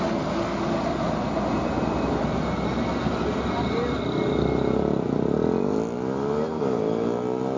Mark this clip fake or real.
real